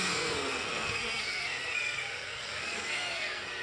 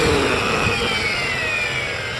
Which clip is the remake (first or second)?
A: first